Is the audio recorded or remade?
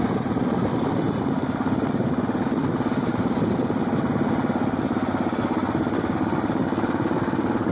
recorded